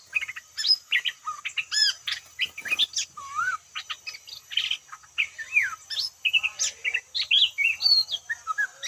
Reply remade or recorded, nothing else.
recorded